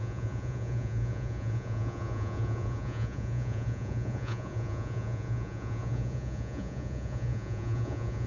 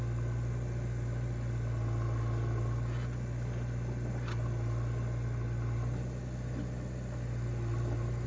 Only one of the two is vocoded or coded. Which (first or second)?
first